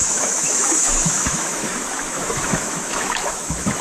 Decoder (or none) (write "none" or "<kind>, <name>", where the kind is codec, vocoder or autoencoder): autoencoder, DAC-VAE